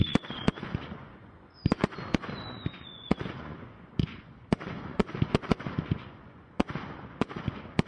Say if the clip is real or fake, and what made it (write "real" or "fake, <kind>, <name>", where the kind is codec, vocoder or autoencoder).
fake, vocoder, Vocos